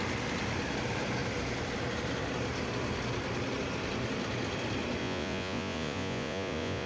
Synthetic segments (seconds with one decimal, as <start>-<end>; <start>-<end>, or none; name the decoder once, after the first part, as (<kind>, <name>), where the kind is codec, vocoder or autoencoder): 5.0-6.9 (vocoder, Vocos)

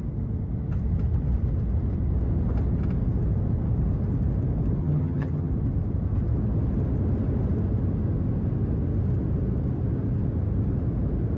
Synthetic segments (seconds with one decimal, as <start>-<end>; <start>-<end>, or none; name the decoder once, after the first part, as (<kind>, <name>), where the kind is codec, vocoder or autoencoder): 4.8-5.5 (vocoder, HiFi-GAN)

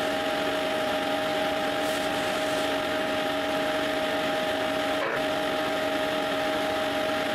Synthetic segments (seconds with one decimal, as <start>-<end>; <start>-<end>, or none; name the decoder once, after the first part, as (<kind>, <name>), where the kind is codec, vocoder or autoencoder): 1.3-5.1 (vocoder, BigVGAN v2)

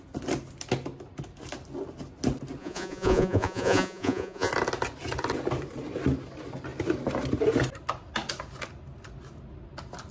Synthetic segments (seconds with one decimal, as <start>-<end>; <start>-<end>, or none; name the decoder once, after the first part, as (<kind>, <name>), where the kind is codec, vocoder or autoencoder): 2.6-4.5 (vocoder, Vocos)